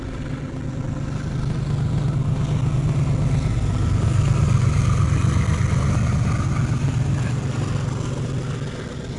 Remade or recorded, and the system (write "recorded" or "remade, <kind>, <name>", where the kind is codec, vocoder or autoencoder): recorded